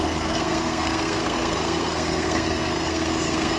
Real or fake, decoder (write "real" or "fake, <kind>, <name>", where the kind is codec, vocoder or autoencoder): fake, codec, SNAC